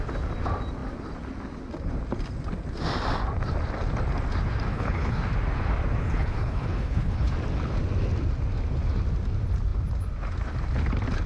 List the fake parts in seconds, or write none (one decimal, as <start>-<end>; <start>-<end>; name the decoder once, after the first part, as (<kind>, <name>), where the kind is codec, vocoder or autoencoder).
4.7-5.2 (codec, HILCodec); 6.0-7.3